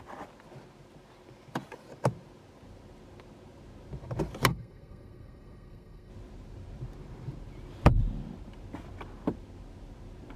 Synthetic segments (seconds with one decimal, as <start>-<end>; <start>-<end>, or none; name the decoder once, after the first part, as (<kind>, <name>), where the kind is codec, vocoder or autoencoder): 4.5-6.1 (codec, SNAC)